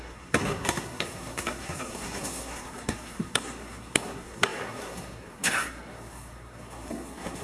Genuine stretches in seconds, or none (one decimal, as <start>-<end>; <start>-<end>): none